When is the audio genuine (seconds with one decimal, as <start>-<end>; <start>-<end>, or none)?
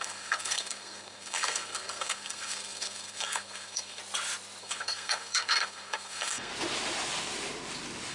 4.0-4.6; 6.5-8.1